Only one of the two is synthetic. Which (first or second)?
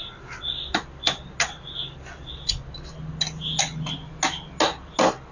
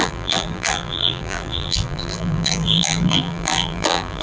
second